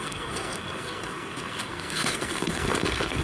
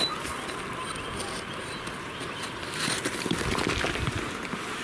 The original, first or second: second